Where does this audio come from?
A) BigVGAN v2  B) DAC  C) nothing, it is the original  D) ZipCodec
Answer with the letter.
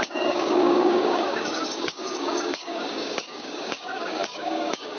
B